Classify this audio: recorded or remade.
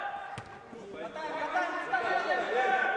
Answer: recorded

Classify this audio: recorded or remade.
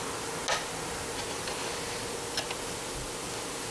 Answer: recorded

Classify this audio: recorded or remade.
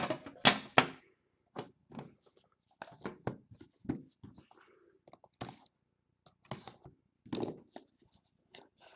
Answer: recorded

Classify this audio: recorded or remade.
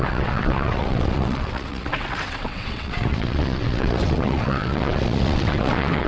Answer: remade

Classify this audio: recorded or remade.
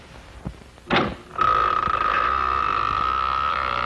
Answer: recorded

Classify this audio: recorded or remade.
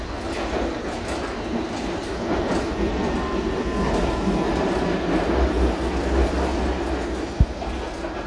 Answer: recorded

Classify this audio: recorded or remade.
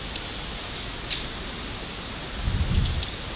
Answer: recorded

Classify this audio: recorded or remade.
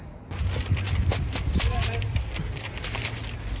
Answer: recorded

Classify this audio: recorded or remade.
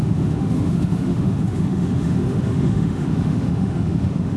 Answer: remade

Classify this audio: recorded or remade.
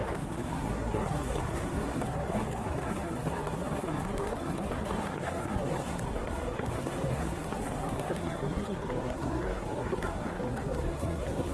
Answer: remade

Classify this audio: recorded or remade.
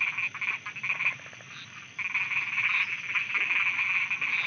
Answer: recorded